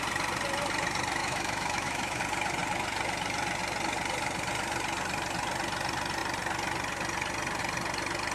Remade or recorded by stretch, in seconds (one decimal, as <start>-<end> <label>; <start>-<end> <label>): 0.0-1.2 recorded; 1.2-2.2 remade; 2.2-8.3 recorded